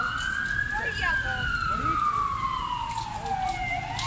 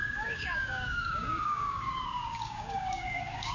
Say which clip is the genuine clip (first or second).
first